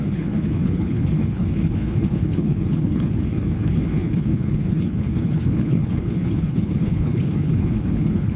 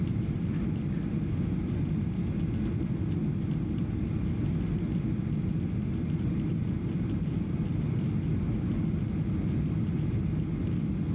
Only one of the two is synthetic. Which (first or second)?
first